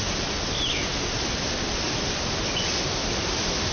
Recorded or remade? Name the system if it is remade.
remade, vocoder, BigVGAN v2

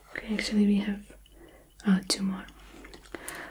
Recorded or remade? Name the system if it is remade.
recorded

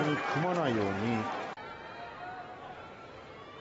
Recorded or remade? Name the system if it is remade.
recorded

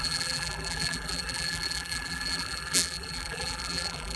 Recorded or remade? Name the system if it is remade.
remade, vocoder, BigVGAN v2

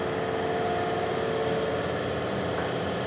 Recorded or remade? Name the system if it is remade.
recorded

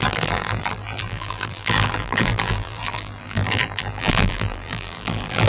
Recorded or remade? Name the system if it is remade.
remade, vocoder, BigVGAN v2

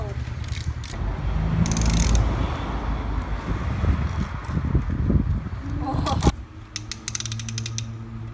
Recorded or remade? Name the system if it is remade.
recorded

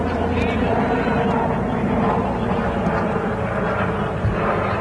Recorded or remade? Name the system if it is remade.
remade, vocoder, BigVGAN v2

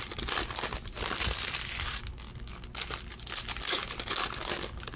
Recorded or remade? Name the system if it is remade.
recorded